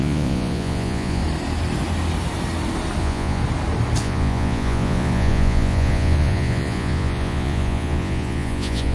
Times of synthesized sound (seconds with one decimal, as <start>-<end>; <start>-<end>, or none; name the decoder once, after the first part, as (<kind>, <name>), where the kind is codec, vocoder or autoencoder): 0.0-1.2 (vocoder, Vocos); 3.0-3.4; 4.0-8.9